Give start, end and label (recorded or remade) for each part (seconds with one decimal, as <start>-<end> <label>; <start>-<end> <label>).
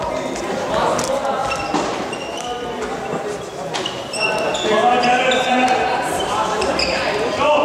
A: 0.0-5.5 recorded; 5.5-6.7 remade; 6.7-7.6 recorded